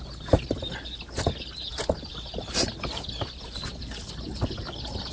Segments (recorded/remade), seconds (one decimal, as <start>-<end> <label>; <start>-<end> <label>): 0.0-5.1 recorded